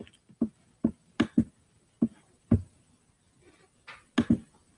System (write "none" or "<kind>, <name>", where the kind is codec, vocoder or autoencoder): none